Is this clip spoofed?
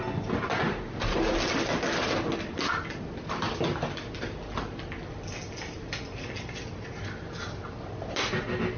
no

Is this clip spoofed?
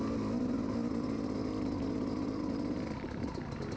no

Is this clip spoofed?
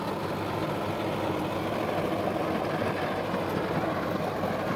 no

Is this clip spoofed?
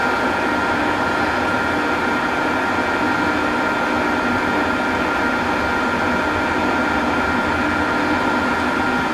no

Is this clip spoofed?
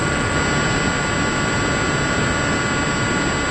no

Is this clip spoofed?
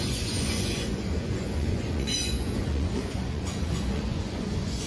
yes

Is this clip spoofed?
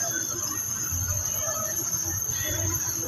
no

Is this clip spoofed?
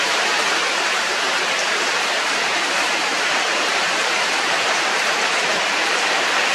yes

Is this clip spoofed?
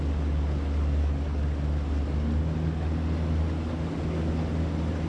no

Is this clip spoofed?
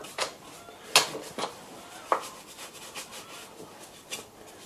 no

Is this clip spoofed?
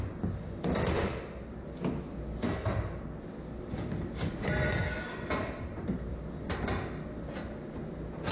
no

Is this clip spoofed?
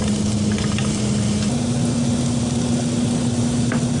no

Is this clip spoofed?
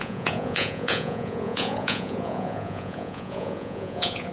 yes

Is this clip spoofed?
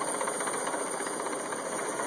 no